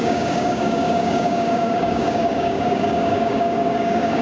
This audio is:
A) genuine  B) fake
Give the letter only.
B